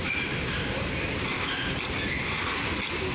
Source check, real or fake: real